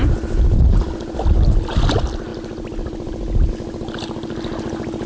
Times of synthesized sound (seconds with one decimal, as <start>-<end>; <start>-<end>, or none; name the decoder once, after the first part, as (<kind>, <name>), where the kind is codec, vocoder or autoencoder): none